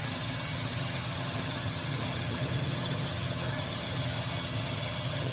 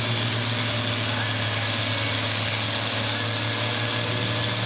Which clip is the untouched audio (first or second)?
second